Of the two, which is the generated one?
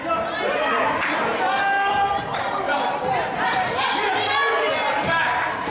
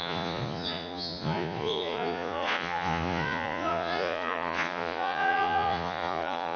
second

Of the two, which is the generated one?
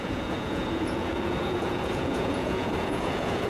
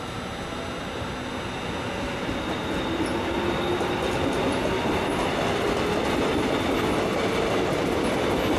first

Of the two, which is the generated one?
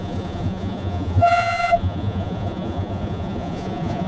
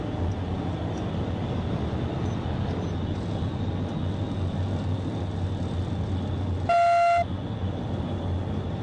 first